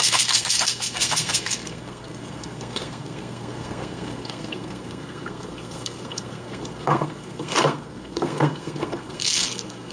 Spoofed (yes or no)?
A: yes